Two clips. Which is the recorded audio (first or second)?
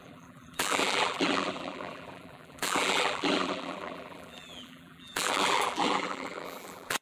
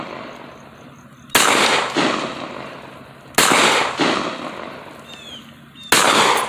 second